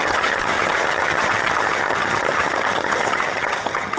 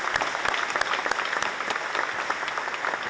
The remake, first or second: first